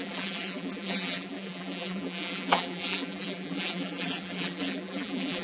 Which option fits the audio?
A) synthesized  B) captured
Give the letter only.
A